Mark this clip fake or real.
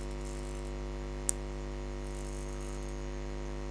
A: real